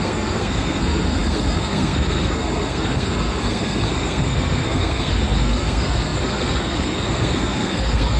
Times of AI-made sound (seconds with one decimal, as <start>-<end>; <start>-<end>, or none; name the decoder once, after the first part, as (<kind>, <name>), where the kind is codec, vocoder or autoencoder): 0.0-8.2 (codec, SNAC)

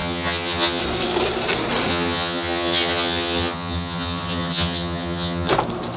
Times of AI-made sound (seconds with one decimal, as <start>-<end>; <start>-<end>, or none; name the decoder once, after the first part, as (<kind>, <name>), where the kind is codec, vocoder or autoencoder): 0.0-0.8 (vocoder, HiFi-GAN); 1.9-5.5

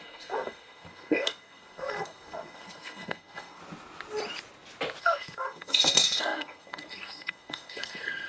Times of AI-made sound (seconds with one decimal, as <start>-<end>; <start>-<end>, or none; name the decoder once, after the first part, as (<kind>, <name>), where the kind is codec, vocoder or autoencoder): 0.0-3.6 (codec, SNAC); 5.0-8.3

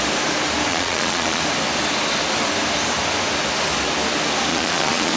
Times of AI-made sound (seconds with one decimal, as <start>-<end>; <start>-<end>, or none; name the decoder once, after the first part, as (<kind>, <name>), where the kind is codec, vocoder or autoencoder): 0.7-1.4 (vocoder, Vocos); 4.5-5.2